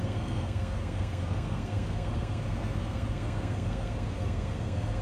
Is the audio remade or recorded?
remade